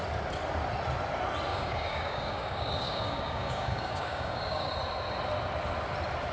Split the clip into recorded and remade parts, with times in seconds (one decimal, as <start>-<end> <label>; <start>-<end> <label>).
0.0-1.5 recorded; 1.5-4.7 remade; 4.7-6.3 recorded